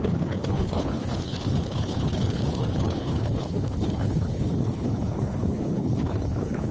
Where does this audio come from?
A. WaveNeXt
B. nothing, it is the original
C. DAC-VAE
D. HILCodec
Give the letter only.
D